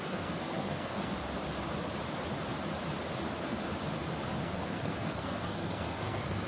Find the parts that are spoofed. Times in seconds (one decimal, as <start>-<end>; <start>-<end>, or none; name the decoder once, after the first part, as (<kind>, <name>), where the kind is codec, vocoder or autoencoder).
0.0-1.1 (codec, SNAC); 4.4-6.5